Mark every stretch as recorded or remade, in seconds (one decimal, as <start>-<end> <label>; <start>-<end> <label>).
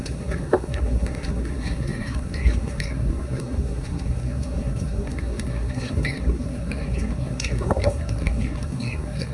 0.0-9.3 remade